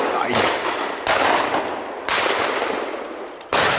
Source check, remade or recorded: recorded